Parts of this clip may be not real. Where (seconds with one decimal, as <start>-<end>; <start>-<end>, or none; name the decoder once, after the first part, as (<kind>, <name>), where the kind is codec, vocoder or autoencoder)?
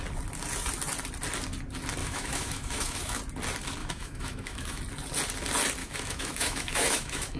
2.0-3.2 (autoencoder, DAC-VAE); 3.8-4.8; 5.8-7.4